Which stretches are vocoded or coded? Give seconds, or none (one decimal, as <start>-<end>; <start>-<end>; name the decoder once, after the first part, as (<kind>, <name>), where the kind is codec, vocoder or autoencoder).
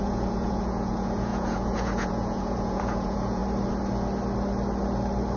0.0-3.4 (vocoder, Vocos)